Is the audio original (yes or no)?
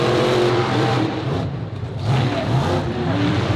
no